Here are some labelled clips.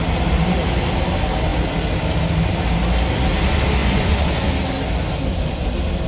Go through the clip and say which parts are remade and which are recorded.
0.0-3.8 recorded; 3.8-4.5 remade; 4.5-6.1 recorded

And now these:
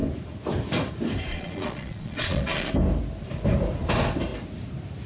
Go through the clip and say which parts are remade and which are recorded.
0.0-1.3 recorded; 1.3-2.7 remade; 2.7-5.1 recorded

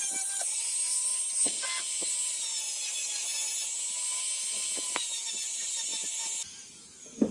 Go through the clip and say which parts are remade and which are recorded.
0.0-7.3 recorded

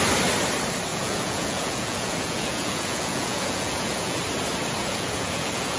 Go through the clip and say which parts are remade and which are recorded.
0.0-0.9 recorded; 0.9-4.2 remade; 4.2-4.8 recorded; 4.8-5.8 remade

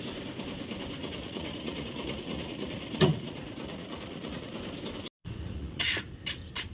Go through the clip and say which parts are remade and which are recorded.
0.0-1.0 recorded; 1.0-4.5 remade; 4.5-5.2 recorded; 5.2-5.8 remade; 5.8-6.7 recorded

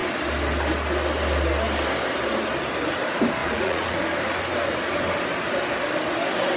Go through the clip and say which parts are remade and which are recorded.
0.0-3.4 recorded; 3.4-4.0 remade; 4.0-6.6 recorded